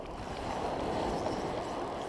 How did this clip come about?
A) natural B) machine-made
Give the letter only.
A